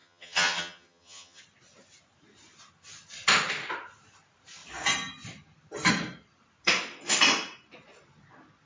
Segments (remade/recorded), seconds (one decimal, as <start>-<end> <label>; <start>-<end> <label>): 0.0-1.4 remade; 1.4-8.7 recorded

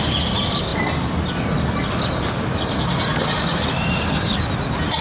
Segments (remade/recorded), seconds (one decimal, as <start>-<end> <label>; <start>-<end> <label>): 0.0-5.0 recorded

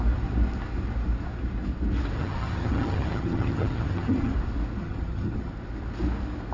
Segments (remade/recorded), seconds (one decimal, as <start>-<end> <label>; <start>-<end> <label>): 0.0-2.2 recorded; 2.2-4.3 remade; 4.3-4.8 recorded; 4.8-5.5 remade; 5.5-6.5 recorded

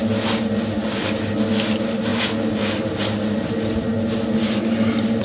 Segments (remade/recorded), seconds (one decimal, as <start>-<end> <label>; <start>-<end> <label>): 0.0-5.2 recorded

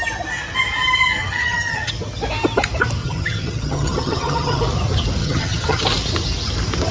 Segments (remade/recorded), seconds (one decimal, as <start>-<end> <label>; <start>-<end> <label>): 0.0-1.2 recorded; 1.2-1.9 remade; 1.9-3.0 recorded; 3.0-4.6 remade; 4.6-5.2 recorded; 5.2-5.8 remade; 5.8-6.9 recorded

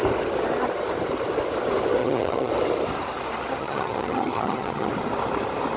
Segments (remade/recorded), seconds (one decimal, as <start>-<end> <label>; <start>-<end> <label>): 0.0-2.0 recorded; 2.0-2.5 remade; 2.5-3.6 recorded; 3.6-4.9 remade; 4.9-5.8 recorded